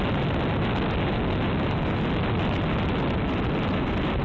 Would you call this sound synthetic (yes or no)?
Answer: no